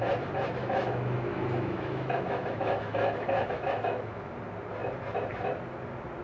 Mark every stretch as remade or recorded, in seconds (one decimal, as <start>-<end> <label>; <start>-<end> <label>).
0.0-0.6 recorded; 0.6-4.3 remade; 4.3-6.2 recorded

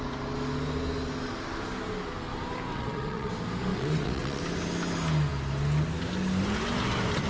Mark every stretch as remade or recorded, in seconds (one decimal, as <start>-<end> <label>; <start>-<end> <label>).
0.0-2.7 recorded; 2.7-3.3 remade; 3.3-3.7 recorded; 3.7-4.4 remade; 4.4-7.3 recorded

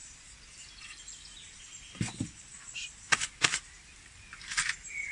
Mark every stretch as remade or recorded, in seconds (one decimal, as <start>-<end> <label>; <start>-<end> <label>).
0.0-0.6 recorded; 0.6-1.0 remade; 1.0-4.1 recorded; 4.1-5.1 remade